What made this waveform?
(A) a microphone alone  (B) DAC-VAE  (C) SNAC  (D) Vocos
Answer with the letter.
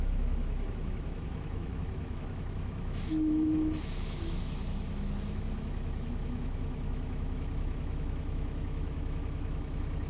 B